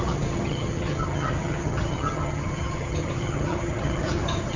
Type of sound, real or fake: fake